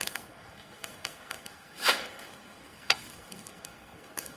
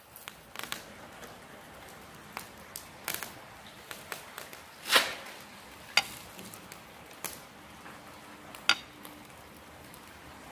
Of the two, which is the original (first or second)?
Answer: second